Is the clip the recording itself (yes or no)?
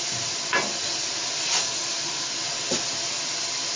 yes